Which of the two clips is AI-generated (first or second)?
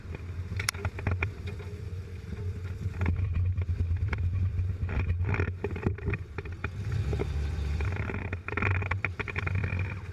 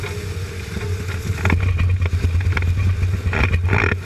first